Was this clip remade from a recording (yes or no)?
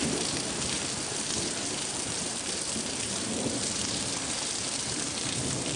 yes